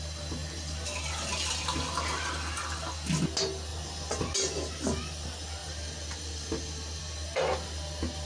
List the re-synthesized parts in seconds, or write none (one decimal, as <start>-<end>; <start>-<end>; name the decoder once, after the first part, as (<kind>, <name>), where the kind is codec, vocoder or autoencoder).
5.6-7.0 (vocoder, BigVGAN v2)